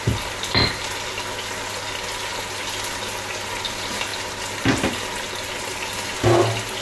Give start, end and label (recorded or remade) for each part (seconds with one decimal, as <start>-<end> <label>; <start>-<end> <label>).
0.0-6.8 recorded